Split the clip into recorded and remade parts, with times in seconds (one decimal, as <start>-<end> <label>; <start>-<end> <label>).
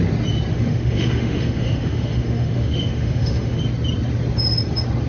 0.0-0.5 recorded; 0.5-3.6 remade; 3.6-5.1 recorded